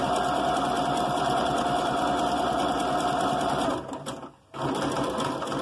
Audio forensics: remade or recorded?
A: recorded